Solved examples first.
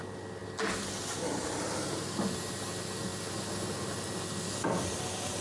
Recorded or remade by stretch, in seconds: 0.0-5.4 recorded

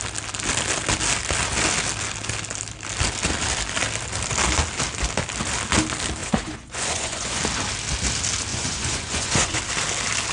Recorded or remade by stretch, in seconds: 0.0-6.2 recorded; 6.2-7.4 remade; 7.4-8.5 recorded; 8.5-9.6 remade; 9.6-10.3 recorded

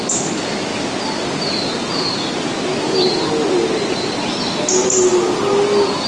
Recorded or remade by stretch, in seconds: 0.0-6.1 recorded

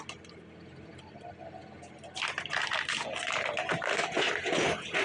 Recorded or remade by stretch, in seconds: 0.0-5.0 recorded

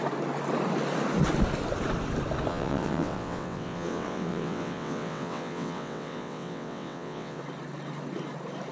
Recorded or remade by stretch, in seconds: 0.0-2.5 recorded; 2.5-7.4 remade; 7.4-8.7 recorded

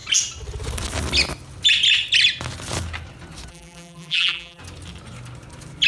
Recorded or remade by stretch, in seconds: 0.0-3.5 recorded; 3.5-4.6 remade; 4.6-5.9 recorded

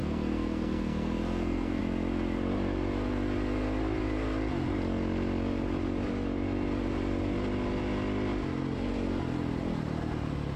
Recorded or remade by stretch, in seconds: 0.0-1.8 remade; 1.8-10.6 recorded